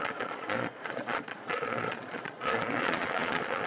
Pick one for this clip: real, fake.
fake